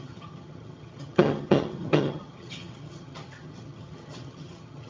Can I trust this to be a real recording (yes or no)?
no